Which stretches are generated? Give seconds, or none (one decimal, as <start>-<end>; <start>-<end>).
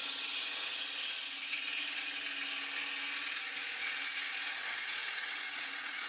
0.0-0.8; 1.4-2.0; 4.6-6.1